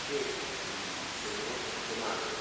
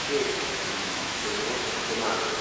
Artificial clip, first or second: second